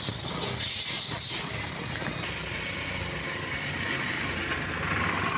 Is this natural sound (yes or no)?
yes